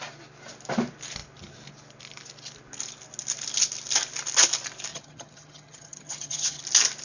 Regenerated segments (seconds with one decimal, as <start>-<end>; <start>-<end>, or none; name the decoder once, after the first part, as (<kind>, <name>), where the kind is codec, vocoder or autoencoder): 4.9-6.6 (vocoder, HiFi-GAN)